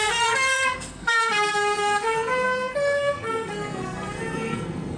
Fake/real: fake